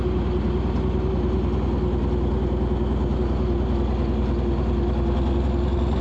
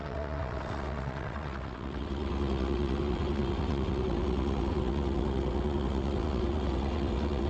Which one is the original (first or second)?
first